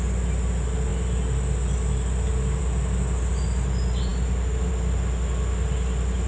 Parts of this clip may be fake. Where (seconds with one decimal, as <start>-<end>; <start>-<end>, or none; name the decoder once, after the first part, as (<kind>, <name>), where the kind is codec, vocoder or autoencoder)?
none